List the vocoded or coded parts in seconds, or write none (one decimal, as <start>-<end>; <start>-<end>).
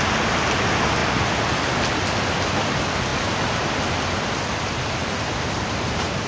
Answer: none